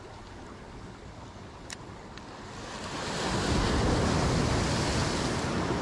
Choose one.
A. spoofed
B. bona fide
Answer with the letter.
B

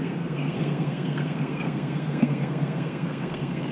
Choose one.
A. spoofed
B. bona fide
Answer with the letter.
A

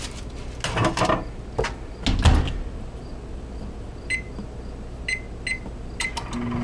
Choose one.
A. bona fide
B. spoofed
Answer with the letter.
A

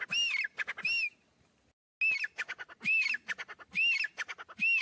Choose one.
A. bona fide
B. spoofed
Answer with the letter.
A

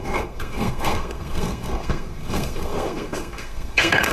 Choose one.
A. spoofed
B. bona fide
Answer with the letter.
A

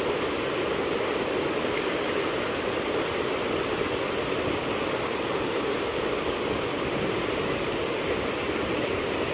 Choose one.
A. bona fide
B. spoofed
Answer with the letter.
A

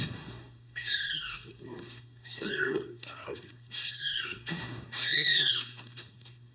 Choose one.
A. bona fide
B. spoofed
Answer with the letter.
B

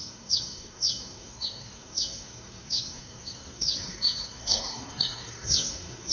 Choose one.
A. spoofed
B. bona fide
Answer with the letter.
A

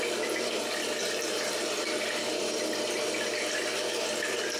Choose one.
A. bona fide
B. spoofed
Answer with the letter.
A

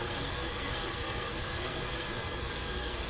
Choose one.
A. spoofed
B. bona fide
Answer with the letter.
A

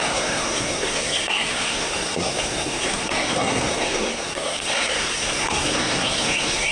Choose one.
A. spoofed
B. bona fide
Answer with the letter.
A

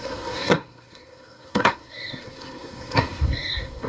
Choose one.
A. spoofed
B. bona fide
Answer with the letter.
A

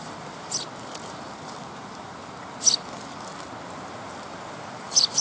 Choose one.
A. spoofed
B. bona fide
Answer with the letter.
B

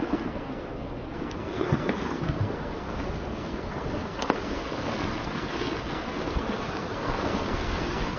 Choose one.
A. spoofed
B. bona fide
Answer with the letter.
A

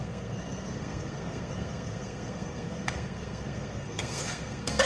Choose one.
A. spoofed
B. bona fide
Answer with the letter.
A